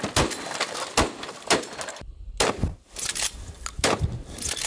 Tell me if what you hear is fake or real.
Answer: real